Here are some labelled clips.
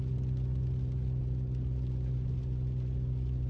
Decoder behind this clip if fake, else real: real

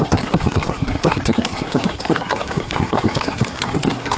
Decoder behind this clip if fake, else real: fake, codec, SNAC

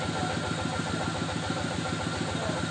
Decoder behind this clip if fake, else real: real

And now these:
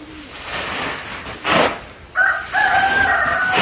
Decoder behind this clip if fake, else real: real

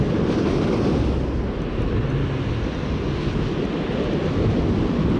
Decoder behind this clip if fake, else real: real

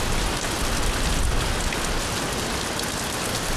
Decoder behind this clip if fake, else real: real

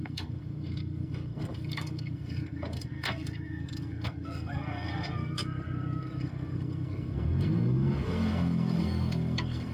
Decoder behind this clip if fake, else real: fake, codec, SNAC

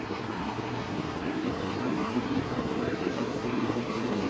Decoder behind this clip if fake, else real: fake, codec, SNAC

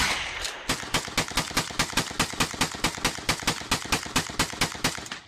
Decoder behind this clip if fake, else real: real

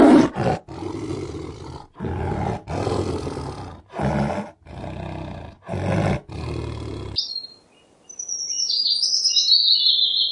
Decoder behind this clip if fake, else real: real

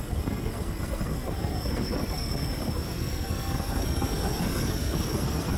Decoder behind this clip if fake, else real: fake, codec, SNAC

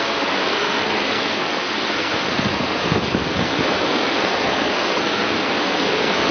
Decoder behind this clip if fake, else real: fake, codec, SNAC